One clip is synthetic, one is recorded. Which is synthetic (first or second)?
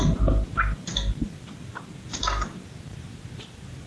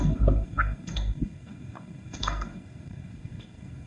second